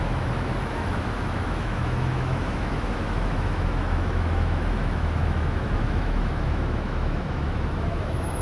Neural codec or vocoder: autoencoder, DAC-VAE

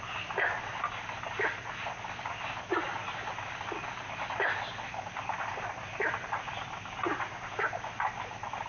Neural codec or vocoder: none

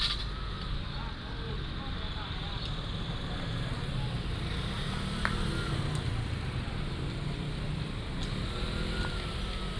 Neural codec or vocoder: none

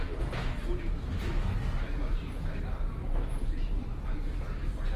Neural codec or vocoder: none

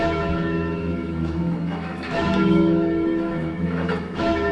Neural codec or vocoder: autoencoder, DAC-VAE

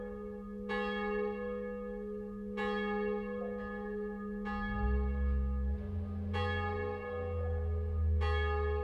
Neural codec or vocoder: none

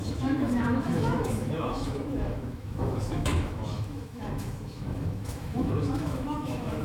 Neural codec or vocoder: autoencoder, DAC-VAE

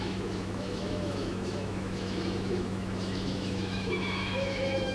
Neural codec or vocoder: autoencoder, DAC-VAE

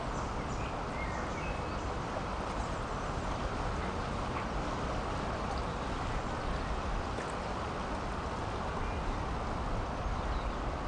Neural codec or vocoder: none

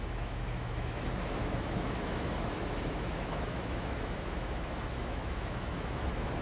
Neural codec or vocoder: autoencoder, DAC-VAE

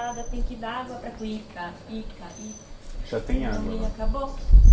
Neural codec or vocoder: none